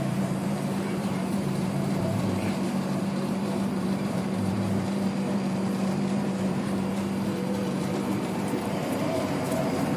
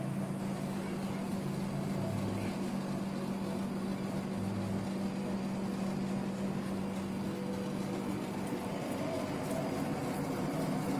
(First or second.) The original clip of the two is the second